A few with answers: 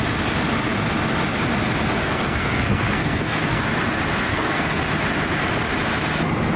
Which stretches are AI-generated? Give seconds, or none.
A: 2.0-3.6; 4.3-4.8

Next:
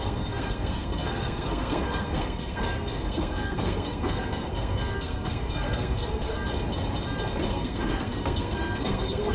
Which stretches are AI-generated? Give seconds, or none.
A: 0.0-6.5; 7.5-9.3

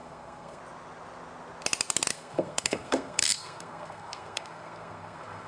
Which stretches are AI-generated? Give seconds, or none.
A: 0.0-0.6; 2.1-5.5

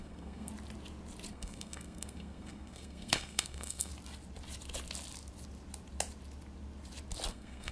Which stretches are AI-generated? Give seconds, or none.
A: 0.0-0.5; 1.3-3.9; 7.3-7.7

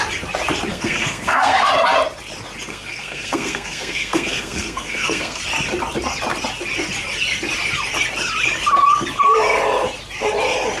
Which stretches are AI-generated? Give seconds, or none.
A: 0.7-1.7; 2.7-5.4